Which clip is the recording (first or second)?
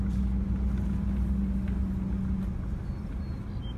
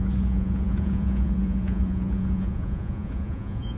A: first